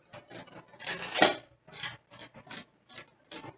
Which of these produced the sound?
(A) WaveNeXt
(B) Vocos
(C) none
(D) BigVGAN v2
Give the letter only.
C